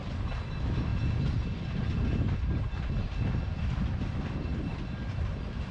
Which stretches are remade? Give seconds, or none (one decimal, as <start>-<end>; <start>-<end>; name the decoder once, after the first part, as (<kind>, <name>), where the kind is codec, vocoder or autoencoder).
0.0-0.9 (vocoder, BigVGAN v2); 3.6-5.7